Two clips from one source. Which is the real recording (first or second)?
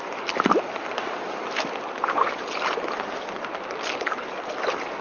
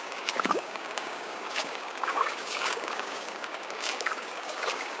first